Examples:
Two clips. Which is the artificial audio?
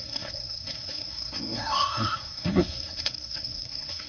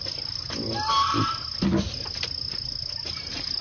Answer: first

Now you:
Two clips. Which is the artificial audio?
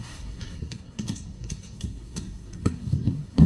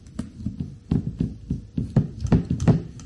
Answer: first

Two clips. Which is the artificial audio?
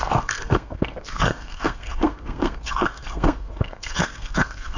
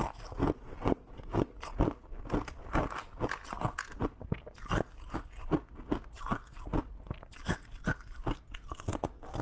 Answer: first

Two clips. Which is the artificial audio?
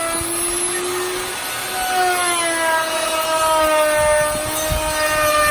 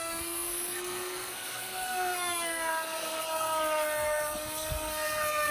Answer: second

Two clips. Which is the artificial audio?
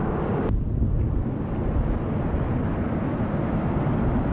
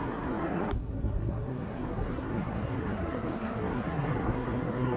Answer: second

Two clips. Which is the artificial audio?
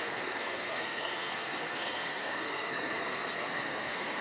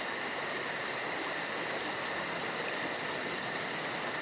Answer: first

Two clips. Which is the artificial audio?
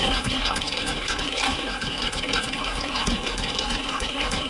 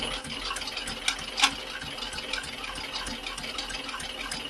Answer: first